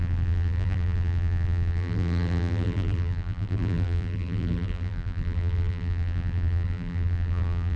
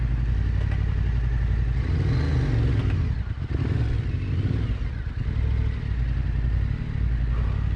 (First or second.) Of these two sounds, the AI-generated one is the first